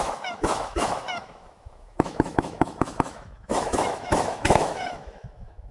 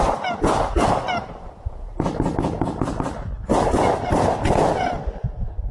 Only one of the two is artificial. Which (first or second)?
first